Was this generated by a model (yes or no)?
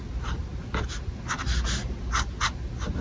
no